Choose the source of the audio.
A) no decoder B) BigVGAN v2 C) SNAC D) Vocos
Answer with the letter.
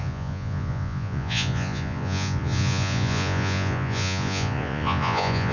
D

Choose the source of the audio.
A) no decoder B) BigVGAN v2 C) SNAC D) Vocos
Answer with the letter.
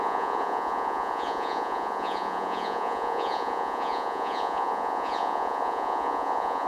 D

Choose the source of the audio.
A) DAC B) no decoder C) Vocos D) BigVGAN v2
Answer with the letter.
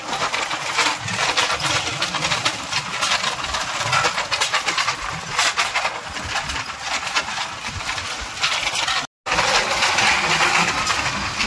B